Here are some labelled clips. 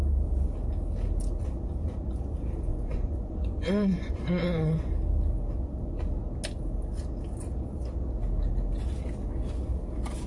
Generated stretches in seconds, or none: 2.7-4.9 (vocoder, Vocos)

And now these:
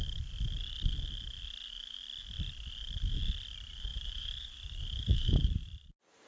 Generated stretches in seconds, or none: 3.9-6.3 (vocoder, BigVGAN v2)

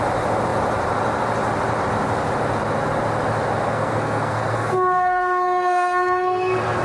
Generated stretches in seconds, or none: 3.7-6.8 (codec, SNAC)

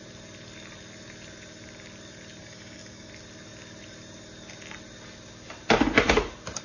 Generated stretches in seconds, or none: 2.4-3.1 (codec, DAC)

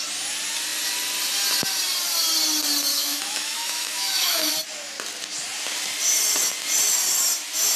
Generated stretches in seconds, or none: 2.9-4.5 (autoencoder, DAC-VAE)

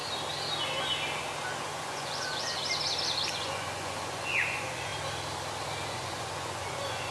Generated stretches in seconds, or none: 1.6-2.6 (vocoder, Vocos); 3.3-4.9; 5.9-7.1

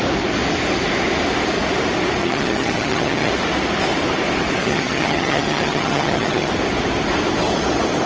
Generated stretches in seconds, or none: 2.2-3.3 (vocoder, HiFi-GAN); 4.6-6.5

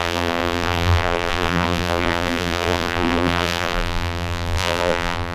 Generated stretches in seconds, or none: 0.0-5.3 (vocoder, BigVGAN v2)